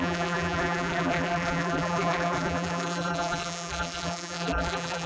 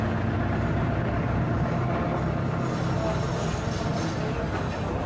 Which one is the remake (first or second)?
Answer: first